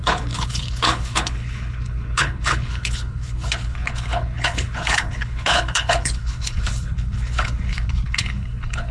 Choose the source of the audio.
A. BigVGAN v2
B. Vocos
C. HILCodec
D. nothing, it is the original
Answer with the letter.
C